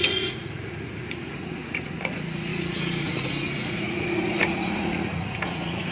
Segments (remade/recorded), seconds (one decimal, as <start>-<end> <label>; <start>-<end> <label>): 0.0-5.9 remade